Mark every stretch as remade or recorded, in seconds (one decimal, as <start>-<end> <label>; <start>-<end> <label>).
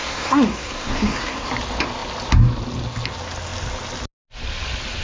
0.0-1.5 remade; 1.5-5.0 recorded